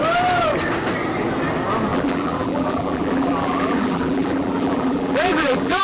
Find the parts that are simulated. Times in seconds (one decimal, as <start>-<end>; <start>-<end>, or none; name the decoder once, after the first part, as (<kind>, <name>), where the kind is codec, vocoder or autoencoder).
1.9-5.8 (vocoder, BigVGAN v2)